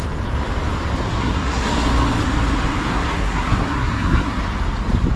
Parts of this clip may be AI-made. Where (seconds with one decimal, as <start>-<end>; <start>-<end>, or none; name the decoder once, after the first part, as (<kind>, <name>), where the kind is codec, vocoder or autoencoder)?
1.2-1.7 (codec, SNAC); 2.9-4.4